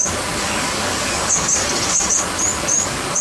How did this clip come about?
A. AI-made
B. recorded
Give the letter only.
A